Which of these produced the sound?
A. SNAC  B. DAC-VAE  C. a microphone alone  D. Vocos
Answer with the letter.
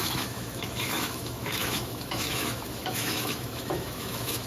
B